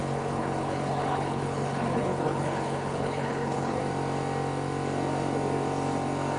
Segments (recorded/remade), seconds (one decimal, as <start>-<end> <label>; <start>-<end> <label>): 0.0-3.8 remade; 3.8-6.4 recorded